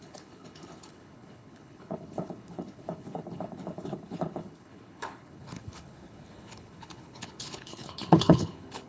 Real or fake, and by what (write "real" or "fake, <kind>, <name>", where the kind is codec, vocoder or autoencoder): fake, codec, HILCodec